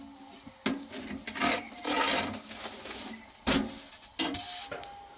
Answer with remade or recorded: recorded